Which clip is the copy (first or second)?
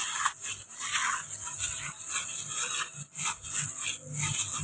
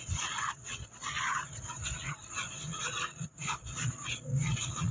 second